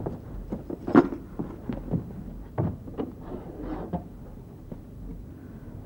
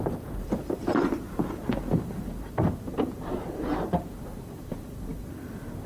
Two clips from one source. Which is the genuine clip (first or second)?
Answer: first